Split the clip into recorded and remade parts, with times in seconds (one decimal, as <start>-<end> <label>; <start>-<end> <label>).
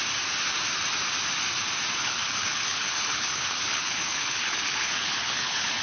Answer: 0.0-2.0 recorded; 2.0-5.8 remade